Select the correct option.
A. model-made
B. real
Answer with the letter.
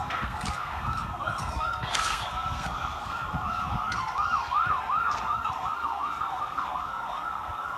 A